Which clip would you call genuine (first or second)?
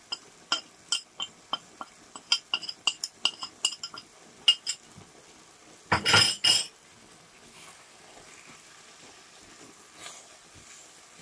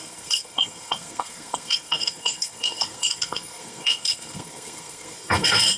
first